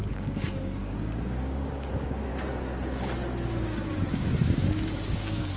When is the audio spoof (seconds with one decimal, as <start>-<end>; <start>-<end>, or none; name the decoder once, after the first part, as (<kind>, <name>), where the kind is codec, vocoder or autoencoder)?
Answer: 0.0-2.3 (codec, DAC); 3.6-5.6